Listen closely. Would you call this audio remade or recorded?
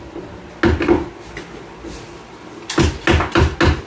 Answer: recorded